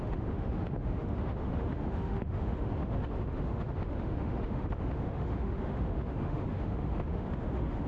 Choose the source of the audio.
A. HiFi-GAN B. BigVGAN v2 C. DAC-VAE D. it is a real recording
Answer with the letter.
C